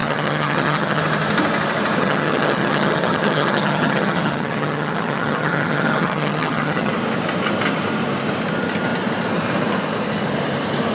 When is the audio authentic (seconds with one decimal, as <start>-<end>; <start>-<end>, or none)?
1.0-2.0; 6.9-10.9